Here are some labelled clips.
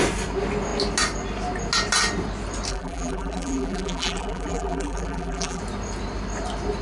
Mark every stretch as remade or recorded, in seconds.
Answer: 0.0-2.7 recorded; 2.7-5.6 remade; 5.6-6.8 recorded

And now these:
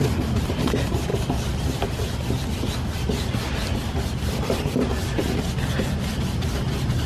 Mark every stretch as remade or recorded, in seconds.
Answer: 0.0-7.1 recorded